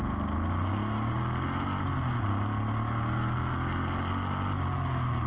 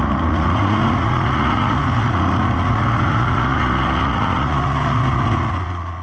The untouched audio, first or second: first